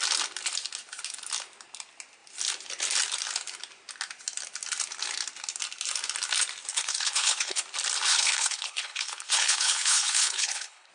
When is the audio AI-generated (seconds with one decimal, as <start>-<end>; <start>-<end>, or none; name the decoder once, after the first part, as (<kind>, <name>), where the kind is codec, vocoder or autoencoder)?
6.7-7.6 (codec, HILCodec); 8.1-10.9

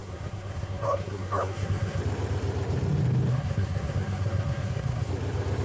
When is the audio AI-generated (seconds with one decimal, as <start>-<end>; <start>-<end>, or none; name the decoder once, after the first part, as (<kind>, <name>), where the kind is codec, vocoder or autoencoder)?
0.0-2.0 (codec, SNAC); 3.3-5.1